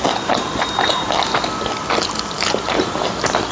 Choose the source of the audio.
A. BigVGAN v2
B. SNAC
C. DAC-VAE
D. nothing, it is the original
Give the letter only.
D